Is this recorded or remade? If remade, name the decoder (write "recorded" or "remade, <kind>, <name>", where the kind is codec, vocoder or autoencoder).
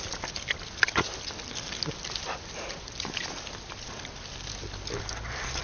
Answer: recorded